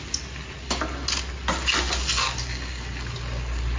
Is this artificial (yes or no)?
no